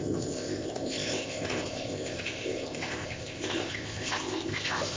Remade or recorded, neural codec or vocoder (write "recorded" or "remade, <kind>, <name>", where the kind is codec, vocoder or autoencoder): remade, codec, ZipCodec